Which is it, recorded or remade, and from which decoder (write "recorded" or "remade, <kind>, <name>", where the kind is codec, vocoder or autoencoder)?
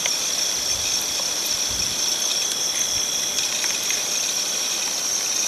recorded